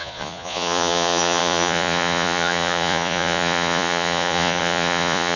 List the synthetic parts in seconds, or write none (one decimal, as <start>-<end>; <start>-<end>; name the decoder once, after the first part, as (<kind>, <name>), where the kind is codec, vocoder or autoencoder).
0.0-5.4 (vocoder, Vocos)